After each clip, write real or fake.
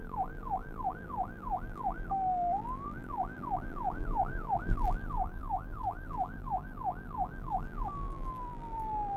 fake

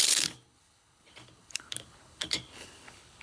fake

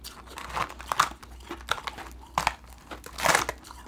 real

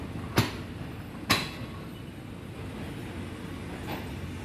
real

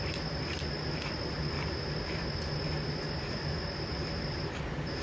real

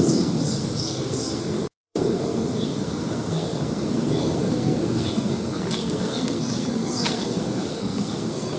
fake